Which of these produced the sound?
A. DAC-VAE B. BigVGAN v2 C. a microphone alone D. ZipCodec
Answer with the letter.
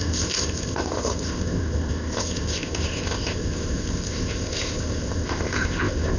D